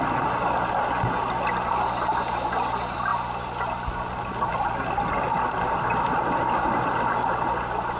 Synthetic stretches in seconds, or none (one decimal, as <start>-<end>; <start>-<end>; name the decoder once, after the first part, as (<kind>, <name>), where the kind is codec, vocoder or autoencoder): none